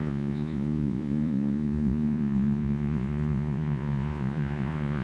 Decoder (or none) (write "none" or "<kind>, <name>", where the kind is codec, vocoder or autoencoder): vocoder, Vocos